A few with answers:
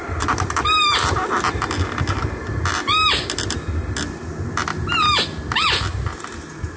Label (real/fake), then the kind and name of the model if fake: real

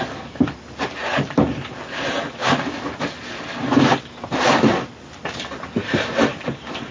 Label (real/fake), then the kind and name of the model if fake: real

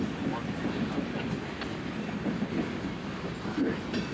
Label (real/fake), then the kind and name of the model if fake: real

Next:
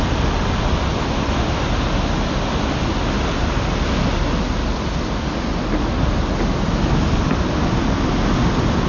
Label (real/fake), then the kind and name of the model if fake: real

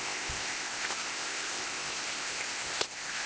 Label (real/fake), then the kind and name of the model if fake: fake, codec, ZipCodec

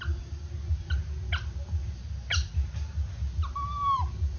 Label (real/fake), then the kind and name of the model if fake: real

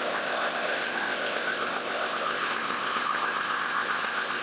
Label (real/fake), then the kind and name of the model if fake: fake, codec, ZipCodec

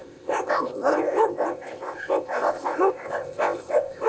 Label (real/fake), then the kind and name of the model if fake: fake, codec, ZipCodec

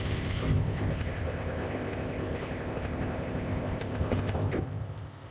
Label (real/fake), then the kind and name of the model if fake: fake, codec, ZipCodec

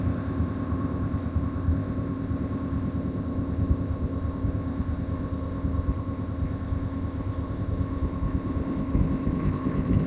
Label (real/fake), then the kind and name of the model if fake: fake, codec, ZipCodec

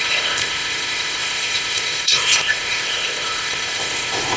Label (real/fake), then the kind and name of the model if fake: fake, codec, ZipCodec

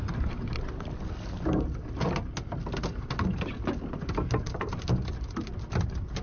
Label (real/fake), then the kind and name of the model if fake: real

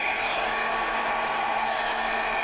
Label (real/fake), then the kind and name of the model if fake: real